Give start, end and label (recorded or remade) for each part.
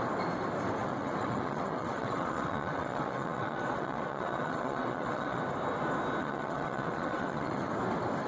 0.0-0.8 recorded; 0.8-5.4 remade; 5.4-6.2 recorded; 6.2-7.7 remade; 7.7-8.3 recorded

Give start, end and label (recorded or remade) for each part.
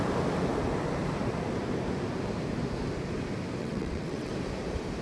0.0-3.6 recorded; 3.6-4.3 remade; 4.3-5.0 recorded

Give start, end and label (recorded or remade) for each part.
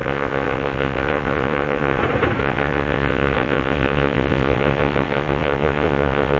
0.0-2.0 remade; 2.0-2.4 recorded; 2.4-6.4 remade